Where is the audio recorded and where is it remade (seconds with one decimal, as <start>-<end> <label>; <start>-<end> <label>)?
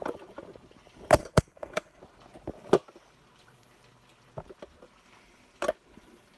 0.0-1.2 recorded; 1.2-2.0 remade; 2.0-6.4 recorded